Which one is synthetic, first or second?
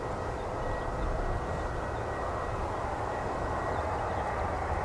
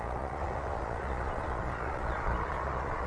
second